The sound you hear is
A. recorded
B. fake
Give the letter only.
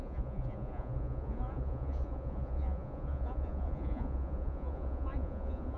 B